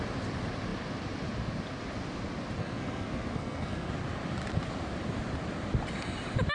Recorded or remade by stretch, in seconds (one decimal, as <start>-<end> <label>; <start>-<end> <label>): 0.0-2.6 recorded; 2.6-3.9 remade; 3.9-6.5 recorded